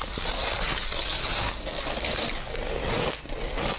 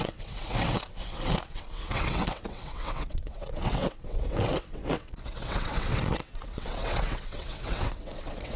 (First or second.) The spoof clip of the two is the second